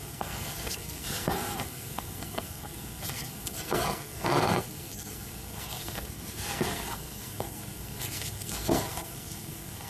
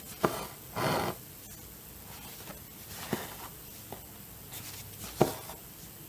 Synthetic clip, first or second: first